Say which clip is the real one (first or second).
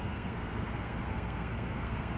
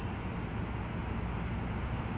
second